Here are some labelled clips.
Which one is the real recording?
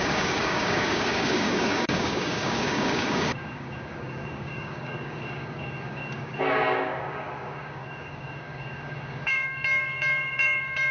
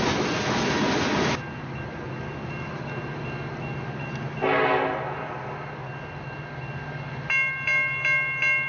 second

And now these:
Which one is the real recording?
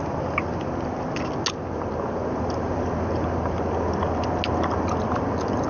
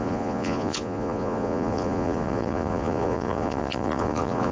first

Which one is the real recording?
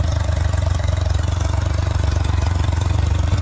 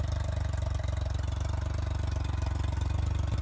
second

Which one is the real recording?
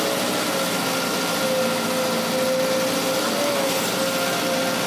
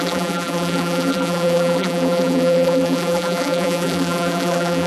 first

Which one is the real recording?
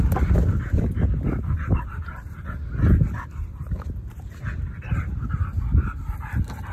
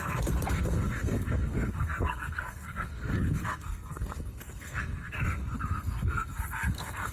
first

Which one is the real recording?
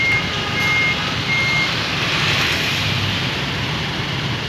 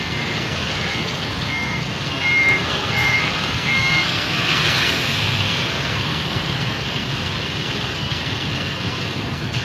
first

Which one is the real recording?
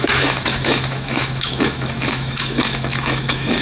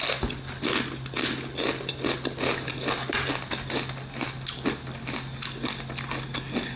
second